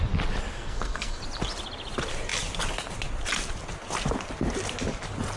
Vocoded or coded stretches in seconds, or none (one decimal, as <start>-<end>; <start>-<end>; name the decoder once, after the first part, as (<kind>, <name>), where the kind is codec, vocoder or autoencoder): 0.5-1.2 (codec, SNAC)